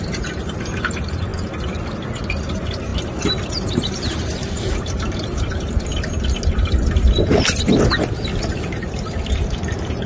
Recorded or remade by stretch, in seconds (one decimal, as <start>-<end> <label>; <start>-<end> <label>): 0.0-1.3 remade; 1.3-2.4 recorded; 2.4-5.9 remade; 5.9-8.5 recorded; 8.5-10.1 remade